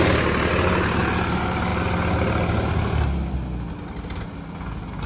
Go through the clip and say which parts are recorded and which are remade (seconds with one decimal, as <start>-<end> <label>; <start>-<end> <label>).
0.0-5.1 recorded